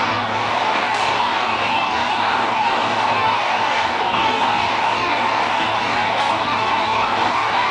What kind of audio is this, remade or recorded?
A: remade